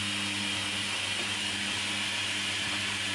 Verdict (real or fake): real